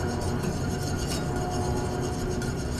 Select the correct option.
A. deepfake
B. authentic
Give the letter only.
B